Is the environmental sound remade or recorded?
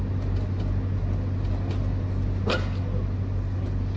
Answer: recorded